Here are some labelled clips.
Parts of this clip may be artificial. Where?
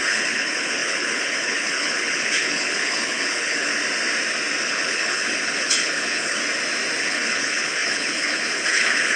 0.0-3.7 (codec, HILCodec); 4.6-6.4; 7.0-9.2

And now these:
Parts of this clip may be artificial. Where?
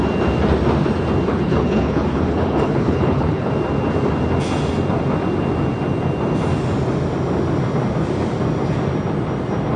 1.3-3.5 (codec, HILCodec)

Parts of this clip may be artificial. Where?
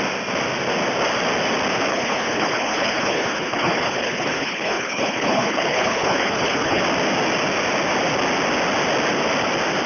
1.9-6.8 (codec, HILCodec)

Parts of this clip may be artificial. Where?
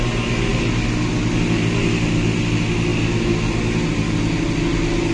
none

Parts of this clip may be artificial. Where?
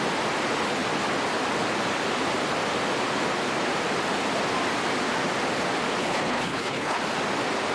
6.0-7.0 (codec, HILCodec)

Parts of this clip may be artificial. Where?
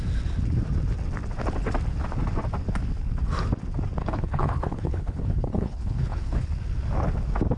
4.0-6.4 (codec, HILCodec)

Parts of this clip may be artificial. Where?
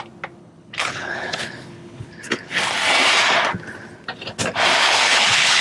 0.4-2.6 (codec, HILCodec); 4.8-5.6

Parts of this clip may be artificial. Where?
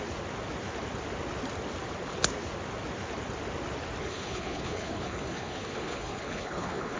4.0-7.0 (codec, HILCodec)